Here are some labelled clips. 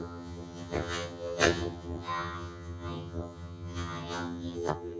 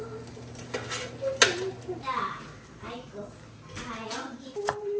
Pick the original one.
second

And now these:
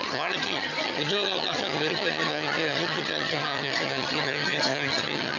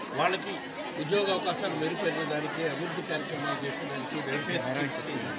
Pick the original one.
second